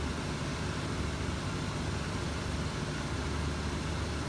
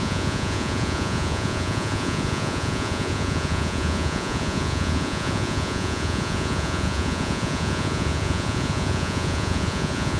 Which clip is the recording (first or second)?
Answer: first